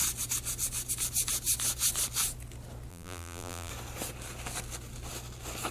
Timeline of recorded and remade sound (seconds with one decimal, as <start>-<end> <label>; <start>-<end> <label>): 0.0-2.9 recorded; 2.9-3.7 remade; 3.7-5.7 recorded